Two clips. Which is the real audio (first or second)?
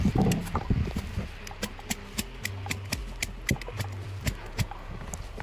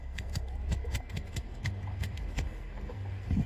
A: first